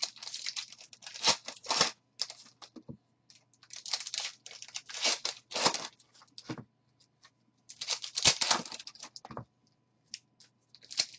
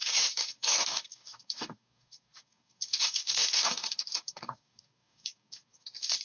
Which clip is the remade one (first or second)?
second